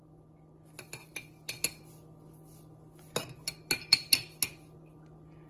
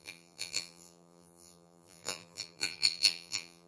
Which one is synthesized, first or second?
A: second